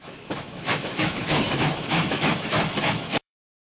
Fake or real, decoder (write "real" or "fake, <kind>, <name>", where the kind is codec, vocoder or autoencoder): fake, autoencoder, DAC-VAE